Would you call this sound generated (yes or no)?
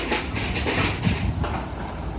no